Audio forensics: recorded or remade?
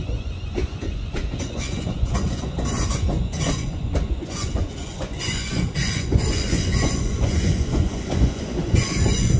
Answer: remade